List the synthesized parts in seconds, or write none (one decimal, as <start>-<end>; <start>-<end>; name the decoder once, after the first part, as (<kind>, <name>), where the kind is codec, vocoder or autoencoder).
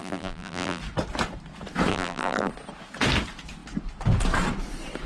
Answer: 0.0-0.8 (vocoder, BigVGAN v2); 1.9-2.5